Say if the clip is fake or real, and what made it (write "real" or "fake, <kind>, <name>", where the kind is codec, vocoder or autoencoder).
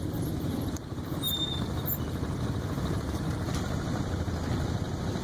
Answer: real